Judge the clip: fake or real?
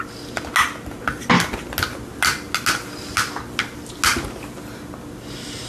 real